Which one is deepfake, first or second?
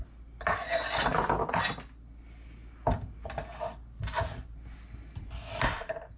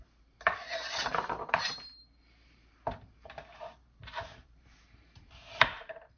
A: second